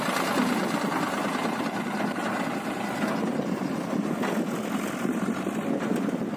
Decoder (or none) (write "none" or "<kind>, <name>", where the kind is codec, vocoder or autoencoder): none